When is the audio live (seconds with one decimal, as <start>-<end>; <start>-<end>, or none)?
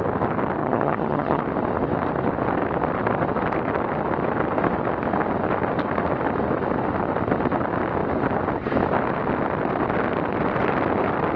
0.0-0.6; 1.4-11.4